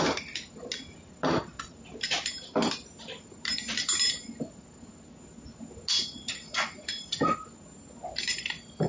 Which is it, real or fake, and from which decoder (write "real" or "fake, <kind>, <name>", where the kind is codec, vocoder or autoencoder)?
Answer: real